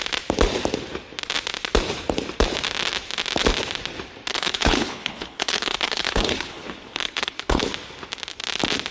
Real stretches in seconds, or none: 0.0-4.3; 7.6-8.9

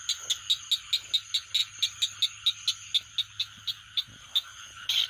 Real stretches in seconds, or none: 0.0-5.1

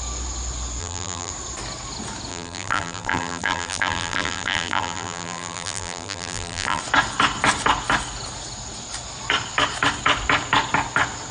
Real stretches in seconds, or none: 0.0-0.8; 1.3-2.3; 6.8-11.3

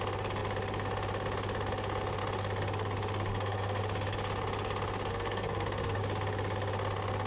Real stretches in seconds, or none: 0.0-3.3; 3.8-5.1; 6.0-7.3

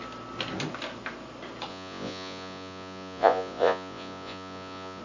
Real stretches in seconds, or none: 0.0-1.7

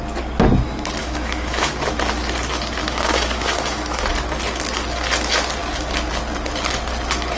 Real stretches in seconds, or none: 0.0-1.0; 1.7-2.8; 4.1-7.4

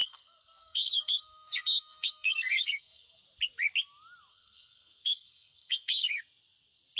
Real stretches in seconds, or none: 3.2-4.3; 6.2-7.0

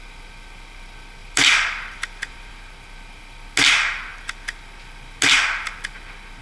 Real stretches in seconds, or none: 0.0-1.2; 2.6-6.4